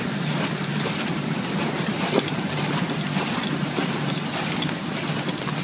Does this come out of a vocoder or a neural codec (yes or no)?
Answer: no